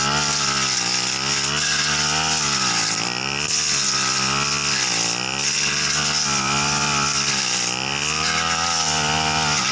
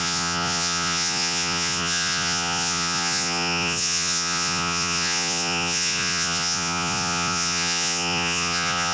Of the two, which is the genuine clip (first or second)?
first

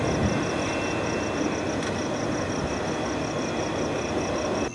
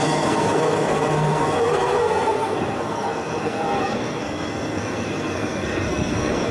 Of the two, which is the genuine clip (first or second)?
first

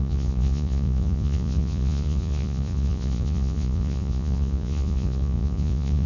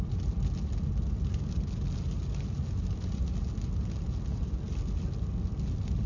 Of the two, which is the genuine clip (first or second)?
second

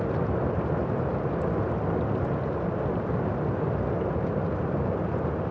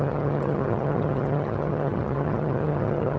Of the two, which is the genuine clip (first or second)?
first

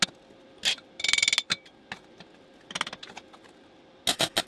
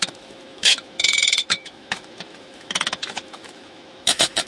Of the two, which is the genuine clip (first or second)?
first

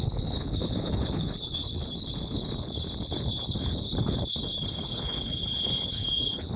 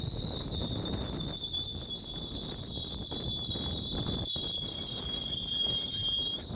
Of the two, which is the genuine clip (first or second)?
second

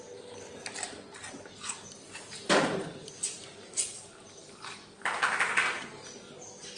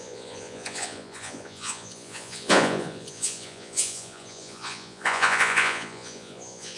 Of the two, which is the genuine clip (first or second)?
first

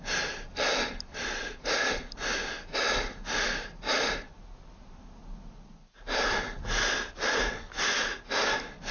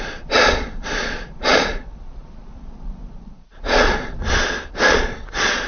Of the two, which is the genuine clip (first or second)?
first